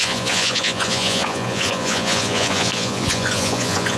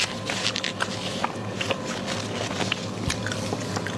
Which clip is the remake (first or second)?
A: first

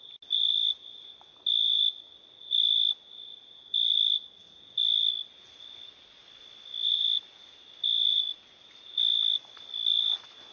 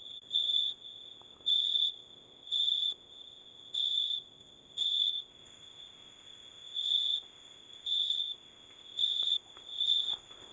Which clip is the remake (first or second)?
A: second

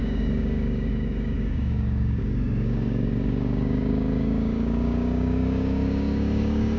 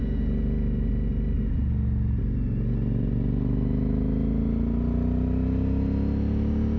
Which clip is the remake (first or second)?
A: first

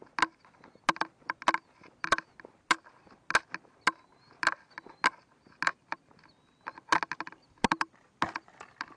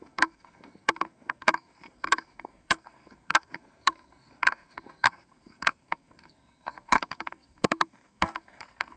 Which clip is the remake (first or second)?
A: second